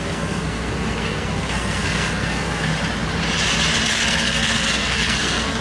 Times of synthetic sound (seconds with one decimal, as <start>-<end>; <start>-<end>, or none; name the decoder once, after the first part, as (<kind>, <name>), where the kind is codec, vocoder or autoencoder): 0.0-2.7 (codec, SNAC); 3.9-5.6